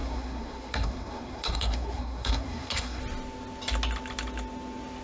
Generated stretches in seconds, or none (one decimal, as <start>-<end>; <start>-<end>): 0.0-3.0